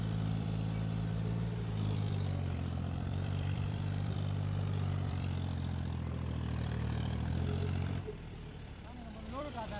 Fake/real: fake